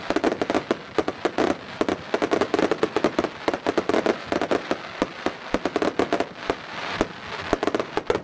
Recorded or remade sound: recorded